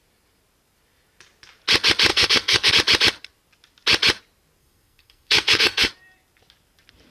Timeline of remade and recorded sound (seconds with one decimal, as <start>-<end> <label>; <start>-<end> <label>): 0.0-2.1 recorded; 2.1-2.7 remade; 2.7-4.6 recorded; 4.6-5.9 remade; 5.9-7.1 recorded